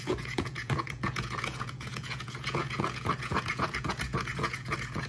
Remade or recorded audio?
remade